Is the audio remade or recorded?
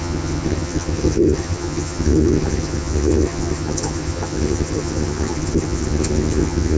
remade